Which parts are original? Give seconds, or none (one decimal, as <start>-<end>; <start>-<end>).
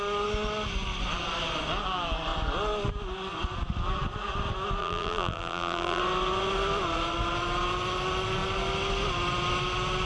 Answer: 0.0-4.8; 6.0-10.1